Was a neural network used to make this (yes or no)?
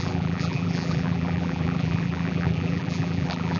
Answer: yes